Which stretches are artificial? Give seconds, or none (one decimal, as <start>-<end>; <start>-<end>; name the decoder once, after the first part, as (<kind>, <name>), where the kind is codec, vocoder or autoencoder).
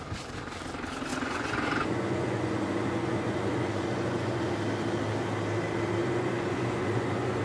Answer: 1.1-4.5 (vocoder, Vocos); 6.0-7.4